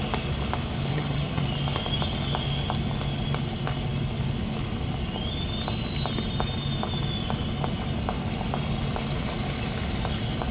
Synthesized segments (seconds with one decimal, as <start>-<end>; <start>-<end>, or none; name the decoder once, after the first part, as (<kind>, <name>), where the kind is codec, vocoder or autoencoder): 0.9-1.4 (vocoder, HiFi-GAN)